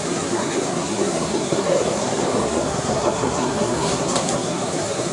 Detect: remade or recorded remade